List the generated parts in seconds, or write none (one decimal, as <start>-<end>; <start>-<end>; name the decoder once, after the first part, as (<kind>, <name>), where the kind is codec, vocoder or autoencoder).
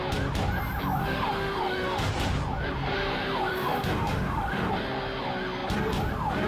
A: 1.0-2.1 (autoencoder, DAC-VAE); 3.5-4.7